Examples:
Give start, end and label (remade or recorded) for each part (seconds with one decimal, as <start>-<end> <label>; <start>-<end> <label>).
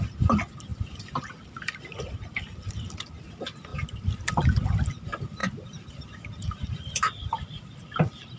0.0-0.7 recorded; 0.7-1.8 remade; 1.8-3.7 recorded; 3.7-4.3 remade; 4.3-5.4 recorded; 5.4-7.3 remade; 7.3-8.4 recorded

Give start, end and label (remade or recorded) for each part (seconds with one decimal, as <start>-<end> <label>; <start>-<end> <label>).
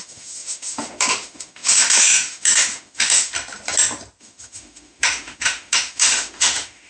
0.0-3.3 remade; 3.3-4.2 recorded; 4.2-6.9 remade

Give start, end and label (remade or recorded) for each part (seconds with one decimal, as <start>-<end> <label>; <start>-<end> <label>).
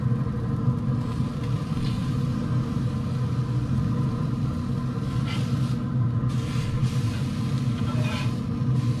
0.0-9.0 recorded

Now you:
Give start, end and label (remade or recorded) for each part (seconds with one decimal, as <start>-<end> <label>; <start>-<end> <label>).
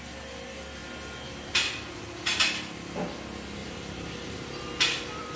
0.0-3.6 recorded; 3.6-4.5 remade; 4.5-5.4 recorded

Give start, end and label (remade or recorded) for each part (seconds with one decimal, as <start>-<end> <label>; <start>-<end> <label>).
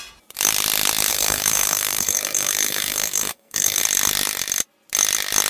0.0-1.1 recorded; 1.1-3.8 remade; 3.8-5.5 recorded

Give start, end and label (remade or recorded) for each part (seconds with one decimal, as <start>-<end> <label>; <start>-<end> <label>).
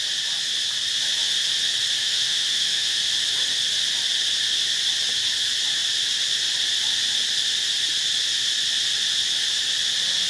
0.0-2.0 recorded; 2.0-3.0 remade; 3.0-10.3 recorded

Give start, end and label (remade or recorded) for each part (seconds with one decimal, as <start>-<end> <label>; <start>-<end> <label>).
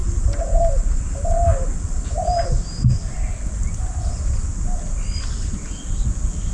0.0-6.5 recorded